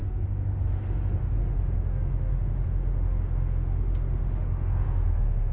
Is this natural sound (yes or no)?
no